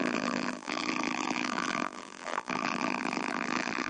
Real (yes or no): no